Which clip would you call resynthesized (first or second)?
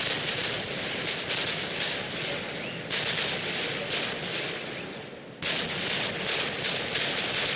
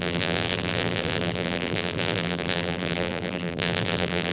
second